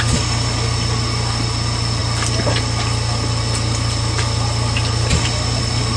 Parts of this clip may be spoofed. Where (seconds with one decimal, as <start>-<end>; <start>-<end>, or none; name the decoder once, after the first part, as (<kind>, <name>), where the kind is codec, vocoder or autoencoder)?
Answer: none